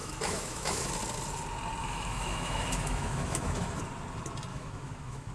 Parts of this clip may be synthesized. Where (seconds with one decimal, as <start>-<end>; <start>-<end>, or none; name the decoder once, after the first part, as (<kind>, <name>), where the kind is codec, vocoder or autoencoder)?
0.0-0.9 (autoencoder, DAC-VAE); 1.8-3.8; 4.5-5.3